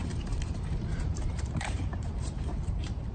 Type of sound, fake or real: fake